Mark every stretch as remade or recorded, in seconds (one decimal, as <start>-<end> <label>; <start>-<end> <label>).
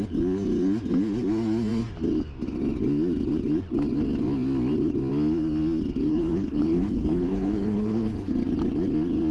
0.0-6.1 recorded; 6.1-8.3 remade; 8.3-9.3 recorded